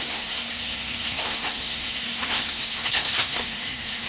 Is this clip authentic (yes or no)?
no